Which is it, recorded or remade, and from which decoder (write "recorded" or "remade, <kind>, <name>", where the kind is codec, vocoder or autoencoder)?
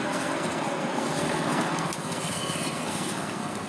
remade, codec, SNAC